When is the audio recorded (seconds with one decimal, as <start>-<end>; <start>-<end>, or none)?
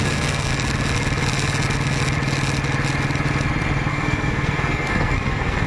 0.5-3.9